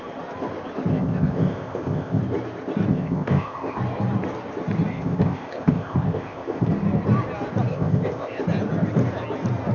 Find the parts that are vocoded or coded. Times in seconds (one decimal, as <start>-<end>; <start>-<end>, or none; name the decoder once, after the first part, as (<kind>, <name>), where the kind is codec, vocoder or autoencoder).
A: 0.9-2.2 (codec, ZipCodec); 2.9-3.8; 4.9-6.7; 7.7-8.4